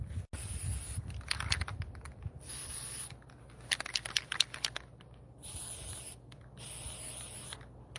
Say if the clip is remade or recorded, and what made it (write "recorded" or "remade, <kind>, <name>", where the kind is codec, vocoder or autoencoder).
recorded